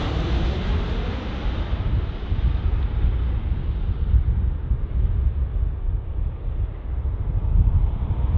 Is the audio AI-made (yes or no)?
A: no